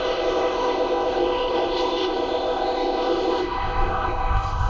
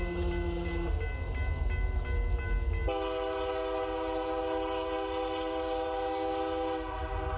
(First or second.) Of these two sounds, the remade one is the first